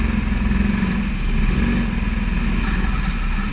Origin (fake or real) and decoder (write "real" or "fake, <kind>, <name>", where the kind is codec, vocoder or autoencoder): real